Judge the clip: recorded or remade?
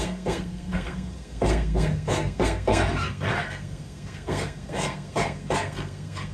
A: remade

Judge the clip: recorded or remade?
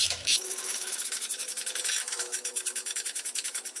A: remade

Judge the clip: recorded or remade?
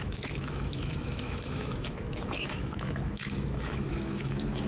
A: remade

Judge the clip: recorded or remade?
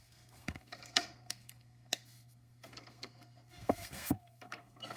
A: remade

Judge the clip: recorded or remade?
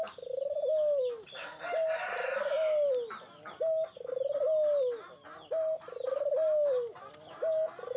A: recorded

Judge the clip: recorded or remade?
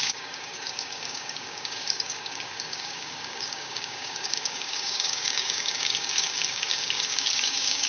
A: remade